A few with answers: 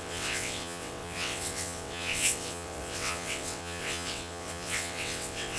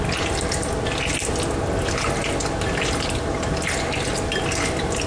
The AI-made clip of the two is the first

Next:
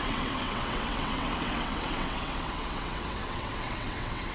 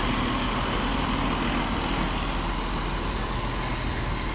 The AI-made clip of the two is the first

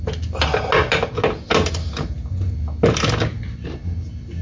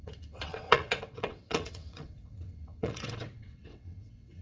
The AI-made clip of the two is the second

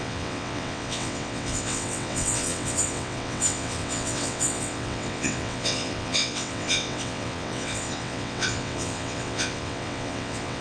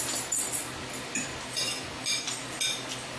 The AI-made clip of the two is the first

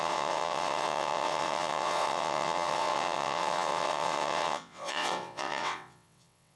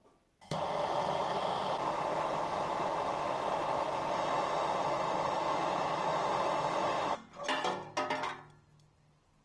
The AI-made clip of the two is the first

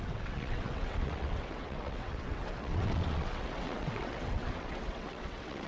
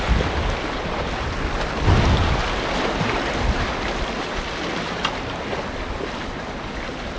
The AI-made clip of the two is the first